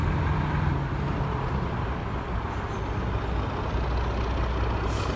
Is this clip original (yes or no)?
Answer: yes